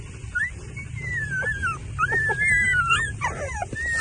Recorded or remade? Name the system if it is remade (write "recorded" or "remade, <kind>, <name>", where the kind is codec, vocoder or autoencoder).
recorded